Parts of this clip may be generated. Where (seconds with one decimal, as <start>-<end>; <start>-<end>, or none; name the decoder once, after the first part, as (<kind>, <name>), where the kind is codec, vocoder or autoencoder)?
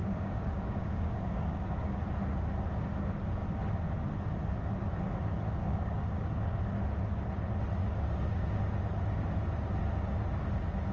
0.0-2.0 (codec, DAC); 5.6-6.8; 7.8-8.6